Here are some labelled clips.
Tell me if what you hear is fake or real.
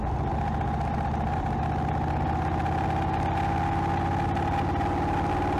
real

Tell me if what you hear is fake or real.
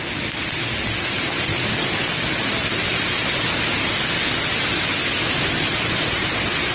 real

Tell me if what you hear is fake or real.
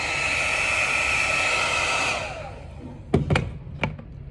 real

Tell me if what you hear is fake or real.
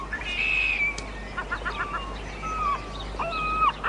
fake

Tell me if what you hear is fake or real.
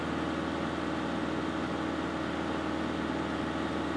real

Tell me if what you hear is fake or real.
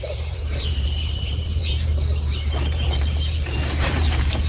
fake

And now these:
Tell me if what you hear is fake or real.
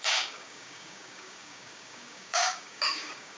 fake